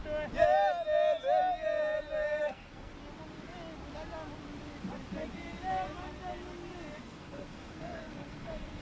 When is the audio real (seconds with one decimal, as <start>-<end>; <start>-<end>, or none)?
0.0-2.4; 2.9-7.0